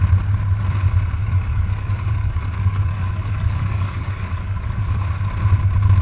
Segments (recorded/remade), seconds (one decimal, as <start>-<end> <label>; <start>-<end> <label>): 0.0-1.2 recorded; 1.2-4.8 remade; 4.8-6.0 recorded